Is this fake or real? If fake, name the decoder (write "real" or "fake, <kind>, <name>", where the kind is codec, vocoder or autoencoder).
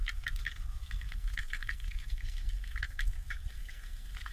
fake, codec, SNAC